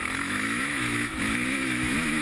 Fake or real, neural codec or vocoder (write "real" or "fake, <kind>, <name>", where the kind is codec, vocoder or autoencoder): fake, autoencoder, DAC-VAE